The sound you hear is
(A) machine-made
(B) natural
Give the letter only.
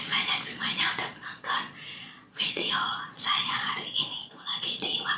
A